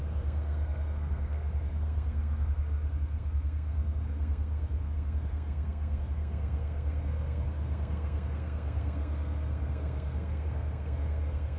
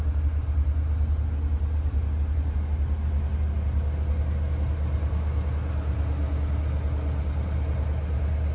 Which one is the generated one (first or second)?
first